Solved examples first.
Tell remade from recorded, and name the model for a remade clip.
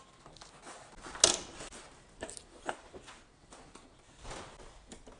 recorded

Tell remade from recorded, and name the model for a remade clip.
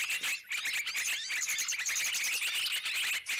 recorded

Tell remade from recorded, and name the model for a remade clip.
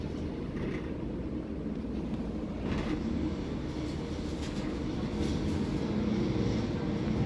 recorded